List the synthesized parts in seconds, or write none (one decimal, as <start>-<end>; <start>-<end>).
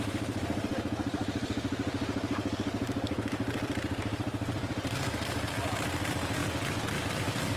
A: 0.0-6.4